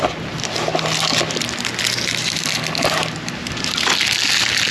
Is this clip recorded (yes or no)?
yes